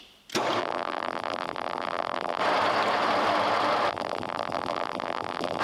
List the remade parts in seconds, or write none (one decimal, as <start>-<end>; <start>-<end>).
0.6-2.4; 3.9-5.6